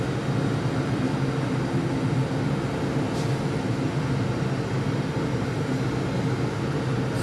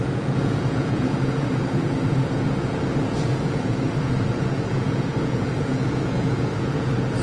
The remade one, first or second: second